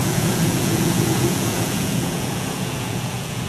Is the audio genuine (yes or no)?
no